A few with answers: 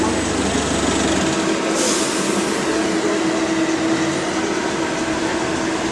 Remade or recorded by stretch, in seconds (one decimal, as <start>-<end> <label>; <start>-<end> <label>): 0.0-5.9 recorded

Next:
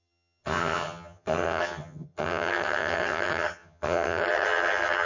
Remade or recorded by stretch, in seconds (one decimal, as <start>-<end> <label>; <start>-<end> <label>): 0.0-5.1 remade

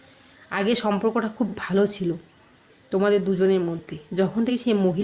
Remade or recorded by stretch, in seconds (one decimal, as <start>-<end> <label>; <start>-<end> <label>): 0.0-5.0 recorded

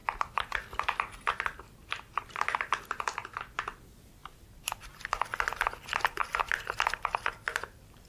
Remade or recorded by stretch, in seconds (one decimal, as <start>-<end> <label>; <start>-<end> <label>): 0.0-6.2 recorded; 6.2-8.1 remade

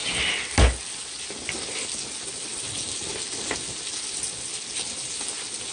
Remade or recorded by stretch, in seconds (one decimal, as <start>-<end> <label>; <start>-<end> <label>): 0.0-5.7 recorded

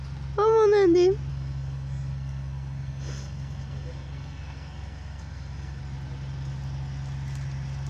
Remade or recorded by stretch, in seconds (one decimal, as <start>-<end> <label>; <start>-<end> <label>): 0.0-1.3 recorded; 1.3-5.8 remade; 5.8-7.9 recorded

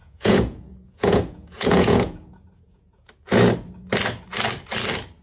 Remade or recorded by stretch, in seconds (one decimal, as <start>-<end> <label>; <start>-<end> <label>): 0.0-3.1 remade; 3.1-5.2 recorded

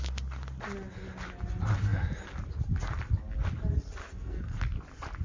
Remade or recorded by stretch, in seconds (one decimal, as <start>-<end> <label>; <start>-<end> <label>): 0.0-4.0 recorded; 4.0-4.6 remade; 4.6-5.2 recorded